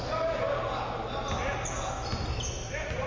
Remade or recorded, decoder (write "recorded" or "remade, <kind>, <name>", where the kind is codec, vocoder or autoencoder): recorded